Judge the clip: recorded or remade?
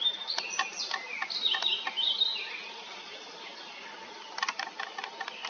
recorded